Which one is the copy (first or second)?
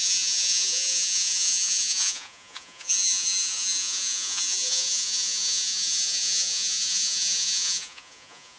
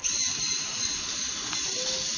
first